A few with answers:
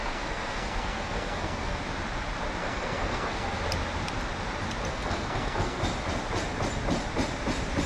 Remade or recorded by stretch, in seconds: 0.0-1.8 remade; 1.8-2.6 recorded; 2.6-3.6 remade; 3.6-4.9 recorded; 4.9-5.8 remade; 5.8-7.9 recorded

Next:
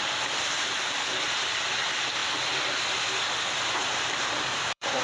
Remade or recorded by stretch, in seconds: 0.0-2.2 remade; 2.2-3.8 recorded; 3.8-5.0 remade

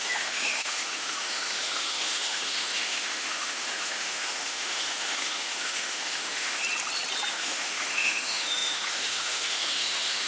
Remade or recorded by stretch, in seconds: 0.0-6.6 remade; 6.6-7.3 recorded; 7.3-10.3 remade

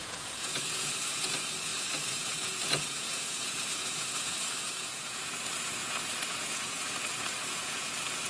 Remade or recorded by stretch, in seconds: 0.0-8.3 remade

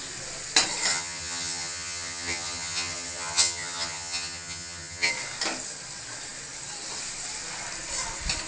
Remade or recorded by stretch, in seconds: 0.0-0.9 recorded; 0.9-5.1 remade; 5.1-8.5 recorded

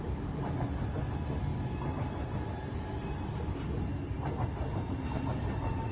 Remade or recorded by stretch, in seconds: 0.0-5.9 recorded